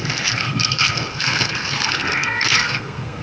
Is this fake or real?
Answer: fake